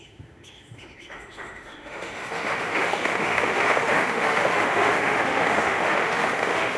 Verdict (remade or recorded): remade